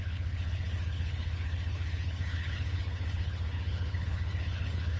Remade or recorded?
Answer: remade